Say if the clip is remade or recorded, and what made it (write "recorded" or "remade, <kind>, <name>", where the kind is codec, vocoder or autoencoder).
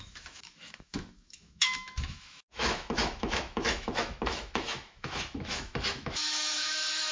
remade, autoencoder, DAC-VAE